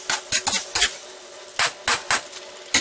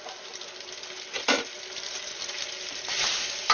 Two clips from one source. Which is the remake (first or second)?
second